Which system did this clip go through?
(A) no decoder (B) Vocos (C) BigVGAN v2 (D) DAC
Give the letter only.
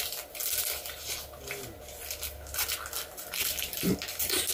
A